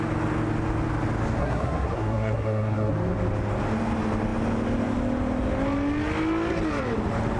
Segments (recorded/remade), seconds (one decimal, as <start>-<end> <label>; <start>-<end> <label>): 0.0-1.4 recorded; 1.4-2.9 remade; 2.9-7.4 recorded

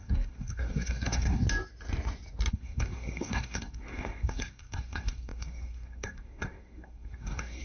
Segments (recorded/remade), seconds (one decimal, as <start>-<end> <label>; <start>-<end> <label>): 0.0-1.4 remade; 1.4-2.5 recorded; 2.5-7.6 remade

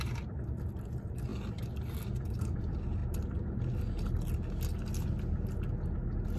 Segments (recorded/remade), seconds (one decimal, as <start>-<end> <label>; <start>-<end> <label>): 0.0-6.4 recorded

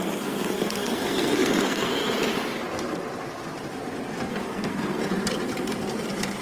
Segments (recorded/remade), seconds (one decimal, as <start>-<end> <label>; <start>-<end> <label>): 0.0-2.0 remade; 2.0-4.3 recorded; 4.3-5.0 remade; 5.0-6.4 recorded